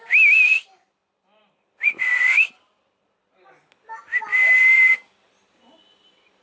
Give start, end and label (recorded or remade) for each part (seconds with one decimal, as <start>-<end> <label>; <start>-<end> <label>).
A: 0.0-1.4 recorded; 1.4-3.6 remade; 3.6-6.4 recorded